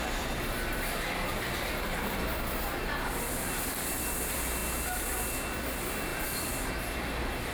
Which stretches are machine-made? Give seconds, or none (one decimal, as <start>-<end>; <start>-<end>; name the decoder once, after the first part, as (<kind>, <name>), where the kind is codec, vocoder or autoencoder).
6.1-6.7 (vocoder, BigVGAN v2)

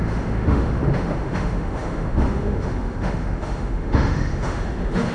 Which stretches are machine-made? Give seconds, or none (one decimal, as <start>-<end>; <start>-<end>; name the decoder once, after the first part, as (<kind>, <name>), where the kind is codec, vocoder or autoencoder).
0.0-5.1 (autoencoder, DAC-VAE)